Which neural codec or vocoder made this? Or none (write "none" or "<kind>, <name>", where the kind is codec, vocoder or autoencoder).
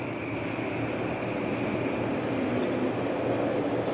none